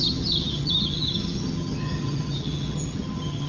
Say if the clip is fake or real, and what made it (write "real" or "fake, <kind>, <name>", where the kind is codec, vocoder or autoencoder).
fake, vocoder, HiFi-GAN